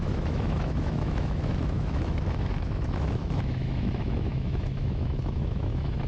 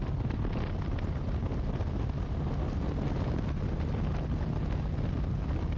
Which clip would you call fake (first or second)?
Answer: first